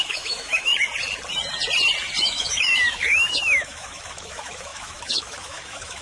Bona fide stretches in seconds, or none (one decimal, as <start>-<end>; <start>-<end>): 0.7-2.2